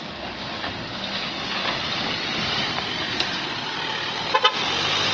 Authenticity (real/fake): real